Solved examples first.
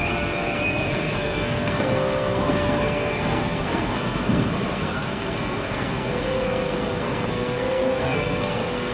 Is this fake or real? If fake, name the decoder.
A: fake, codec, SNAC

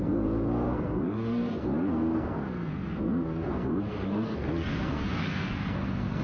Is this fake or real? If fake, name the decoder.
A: fake, codec, SNAC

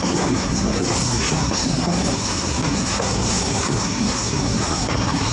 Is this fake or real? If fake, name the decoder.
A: fake, codec, SNAC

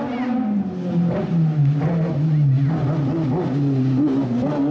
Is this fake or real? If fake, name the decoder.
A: real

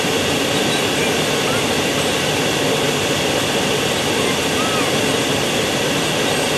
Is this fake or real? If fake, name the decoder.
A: real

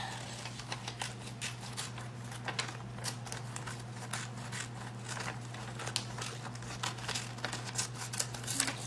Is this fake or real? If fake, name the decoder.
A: real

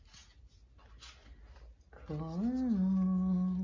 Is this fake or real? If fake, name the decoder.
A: real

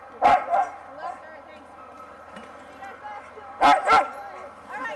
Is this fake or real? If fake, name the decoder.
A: real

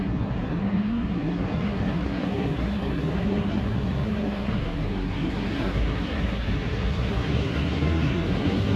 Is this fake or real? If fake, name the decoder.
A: fake, codec, SNAC